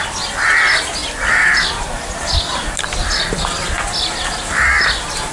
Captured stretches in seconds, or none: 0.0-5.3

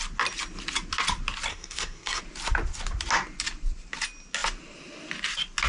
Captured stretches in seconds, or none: 0.0-1.5; 2.2-5.7

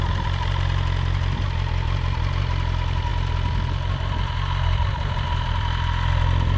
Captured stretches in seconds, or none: 0.0-6.6

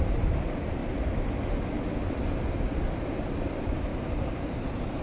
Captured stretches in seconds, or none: 0.8-3.4

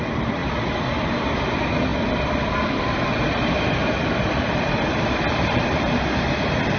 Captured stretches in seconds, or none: 0.0-1.9; 5.9-6.8